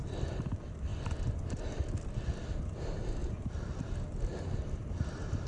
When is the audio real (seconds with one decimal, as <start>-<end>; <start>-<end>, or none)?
0.0-5.5